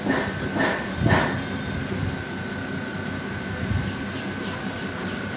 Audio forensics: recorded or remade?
recorded